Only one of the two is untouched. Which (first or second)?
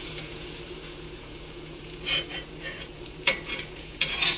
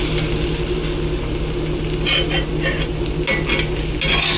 second